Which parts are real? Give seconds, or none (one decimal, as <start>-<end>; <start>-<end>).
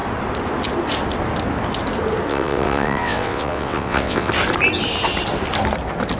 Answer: 0.0-2.3; 4.3-6.2